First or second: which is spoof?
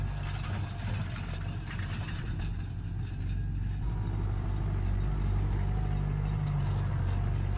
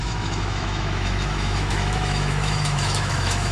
second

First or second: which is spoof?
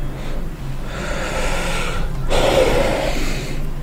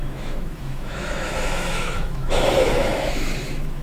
second